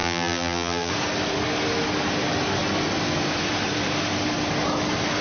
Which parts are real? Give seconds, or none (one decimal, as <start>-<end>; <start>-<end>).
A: 0.9-5.2